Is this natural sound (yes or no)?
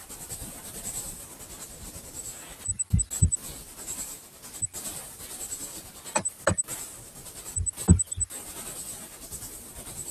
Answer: yes